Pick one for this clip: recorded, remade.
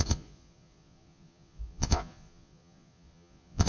remade